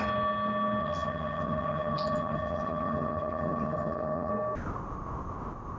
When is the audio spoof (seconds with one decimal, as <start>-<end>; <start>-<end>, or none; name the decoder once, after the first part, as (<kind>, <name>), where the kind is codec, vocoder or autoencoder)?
0.8-4.3 (vocoder, HiFi-GAN)